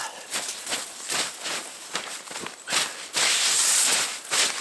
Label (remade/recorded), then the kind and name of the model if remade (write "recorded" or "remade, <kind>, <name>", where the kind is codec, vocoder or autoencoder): recorded